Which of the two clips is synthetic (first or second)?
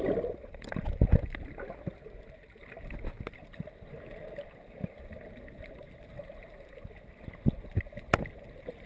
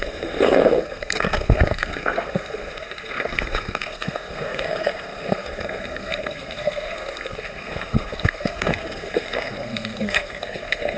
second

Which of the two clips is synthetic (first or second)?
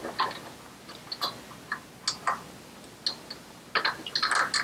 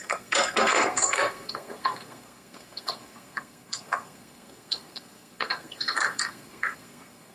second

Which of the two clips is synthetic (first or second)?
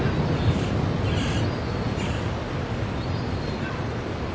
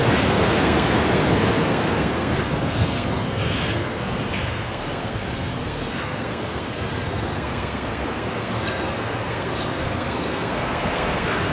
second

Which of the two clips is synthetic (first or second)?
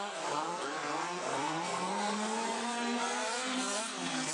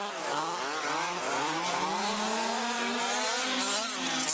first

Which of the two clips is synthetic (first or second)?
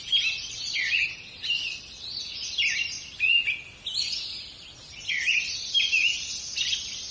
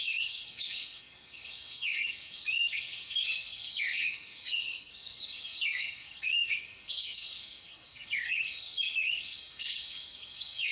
second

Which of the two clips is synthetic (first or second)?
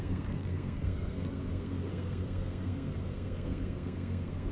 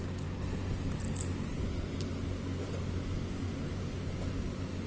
first